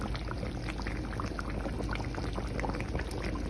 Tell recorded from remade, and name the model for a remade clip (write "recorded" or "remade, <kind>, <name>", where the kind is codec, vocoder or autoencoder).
recorded